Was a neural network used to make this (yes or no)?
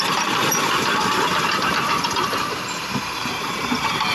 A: yes